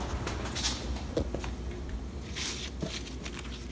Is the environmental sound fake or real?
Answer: real